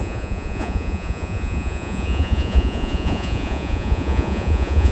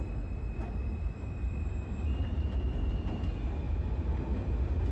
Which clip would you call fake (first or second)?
first